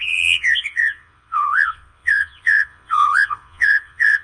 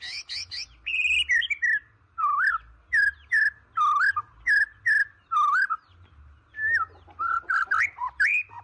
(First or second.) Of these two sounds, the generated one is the first